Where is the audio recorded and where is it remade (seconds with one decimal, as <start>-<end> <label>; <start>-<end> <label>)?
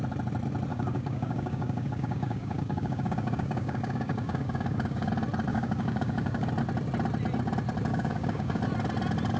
0.0-0.7 recorded; 0.7-5.1 remade; 5.1-5.5 recorded; 5.5-6.5 remade; 6.5-7.9 recorded; 7.9-8.6 remade; 8.6-9.4 recorded